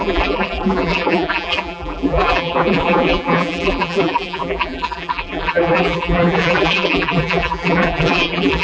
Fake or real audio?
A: fake